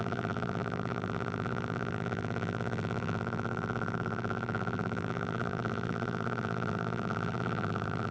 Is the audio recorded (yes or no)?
no